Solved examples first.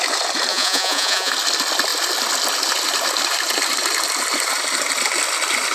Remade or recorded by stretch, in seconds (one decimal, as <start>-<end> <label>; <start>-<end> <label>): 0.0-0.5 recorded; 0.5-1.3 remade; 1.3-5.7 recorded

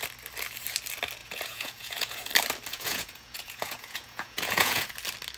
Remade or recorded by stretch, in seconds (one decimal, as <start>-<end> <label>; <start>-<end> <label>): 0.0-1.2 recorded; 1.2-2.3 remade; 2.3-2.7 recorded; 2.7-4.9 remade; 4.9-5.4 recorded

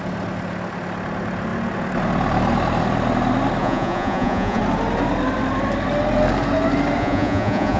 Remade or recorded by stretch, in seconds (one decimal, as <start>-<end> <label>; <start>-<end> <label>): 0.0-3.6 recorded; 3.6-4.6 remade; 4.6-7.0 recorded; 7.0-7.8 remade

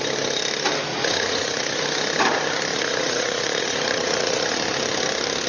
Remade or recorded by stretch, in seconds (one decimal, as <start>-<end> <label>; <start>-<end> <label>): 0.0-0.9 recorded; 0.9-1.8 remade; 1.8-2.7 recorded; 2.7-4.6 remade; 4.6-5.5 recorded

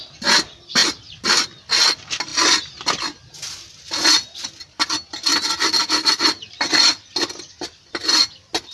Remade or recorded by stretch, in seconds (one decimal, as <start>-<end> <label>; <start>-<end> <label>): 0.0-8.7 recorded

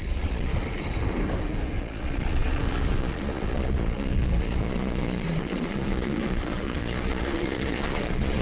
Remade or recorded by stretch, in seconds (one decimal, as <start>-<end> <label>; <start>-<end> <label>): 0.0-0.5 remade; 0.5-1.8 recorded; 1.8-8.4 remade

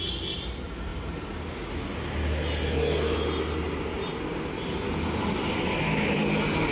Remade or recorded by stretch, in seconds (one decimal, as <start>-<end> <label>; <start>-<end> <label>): 0.0-6.7 recorded

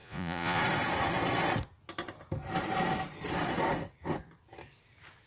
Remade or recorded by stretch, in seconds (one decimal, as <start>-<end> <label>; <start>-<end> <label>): 0.0-0.6 remade; 0.6-5.3 recorded